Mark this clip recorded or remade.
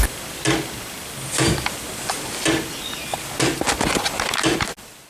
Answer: recorded